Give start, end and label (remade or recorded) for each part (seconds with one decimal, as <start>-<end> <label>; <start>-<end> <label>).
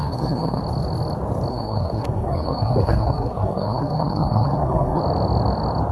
0.0-0.6 remade; 0.6-1.5 recorded; 1.5-5.0 remade; 5.0-5.9 recorded